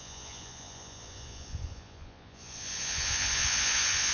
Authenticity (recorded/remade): remade